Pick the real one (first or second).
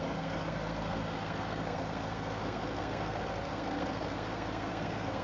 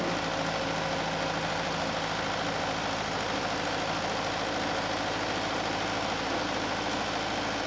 second